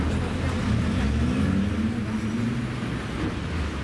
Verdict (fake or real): real